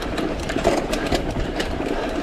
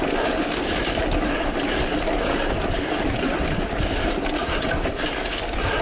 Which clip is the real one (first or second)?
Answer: second